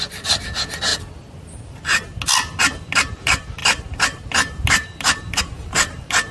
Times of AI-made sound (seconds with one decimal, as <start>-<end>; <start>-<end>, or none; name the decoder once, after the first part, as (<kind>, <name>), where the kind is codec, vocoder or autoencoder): 0.0-0.9 (vocoder, BigVGAN v2); 2.6-6.3